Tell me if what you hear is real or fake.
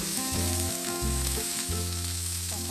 fake